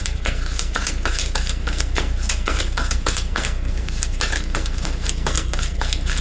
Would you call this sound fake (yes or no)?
yes